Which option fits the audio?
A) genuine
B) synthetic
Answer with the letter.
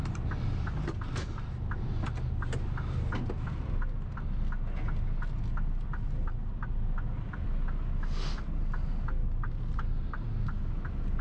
A